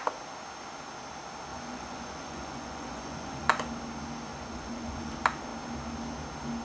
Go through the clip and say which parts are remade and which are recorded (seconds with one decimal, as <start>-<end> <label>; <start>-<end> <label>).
0.0-1.5 recorded; 1.5-3.6 remade; 3.6-4.3 recorded; 4.3-5.1 remade; 5.1-6.6 recorded